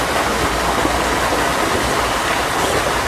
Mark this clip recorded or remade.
recorded